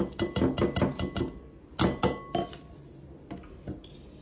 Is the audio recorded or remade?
recorded